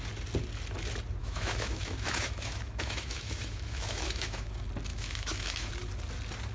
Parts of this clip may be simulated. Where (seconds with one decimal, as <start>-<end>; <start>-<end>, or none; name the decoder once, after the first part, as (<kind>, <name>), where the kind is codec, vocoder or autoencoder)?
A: 1.2-4.5 (autoencoder, DAC-VAE); 4.9-5.7